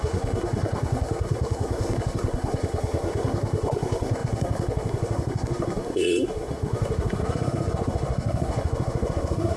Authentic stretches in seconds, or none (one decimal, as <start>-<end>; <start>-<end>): none